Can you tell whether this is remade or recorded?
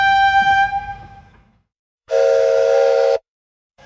remade